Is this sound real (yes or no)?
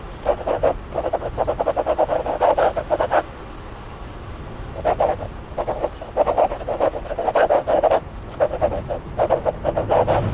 yes